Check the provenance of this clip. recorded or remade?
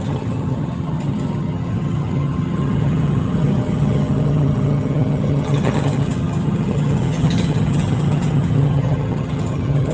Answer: remade